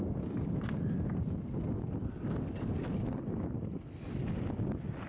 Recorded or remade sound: recorded